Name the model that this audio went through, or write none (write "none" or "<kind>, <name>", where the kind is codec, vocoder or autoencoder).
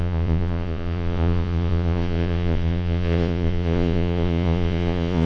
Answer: vocoder, Vocos